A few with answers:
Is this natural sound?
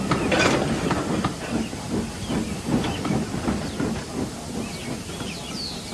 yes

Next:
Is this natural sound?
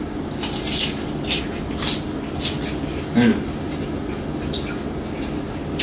yes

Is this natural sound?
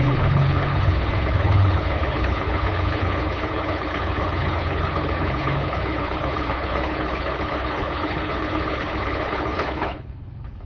no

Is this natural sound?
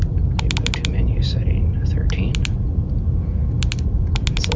yes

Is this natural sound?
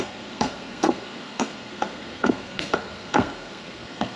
no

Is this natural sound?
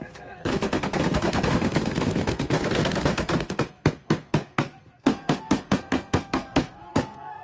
no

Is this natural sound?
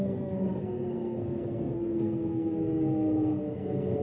no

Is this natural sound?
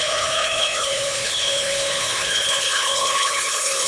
no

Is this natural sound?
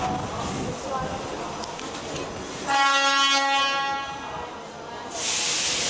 yes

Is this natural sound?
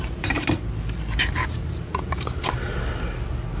yes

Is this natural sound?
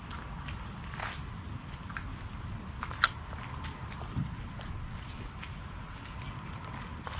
yes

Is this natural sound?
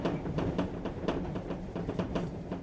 no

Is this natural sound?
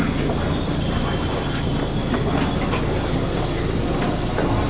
yes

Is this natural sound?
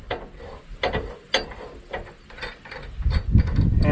yes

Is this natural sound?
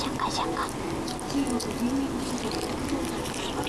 yes